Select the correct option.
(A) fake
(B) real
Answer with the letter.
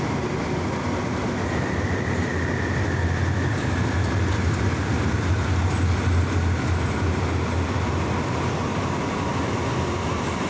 B